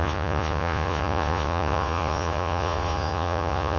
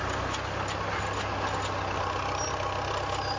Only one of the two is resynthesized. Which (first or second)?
first